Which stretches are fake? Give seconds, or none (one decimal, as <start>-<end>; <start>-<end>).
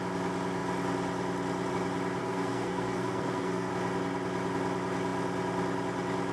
2.2-3.7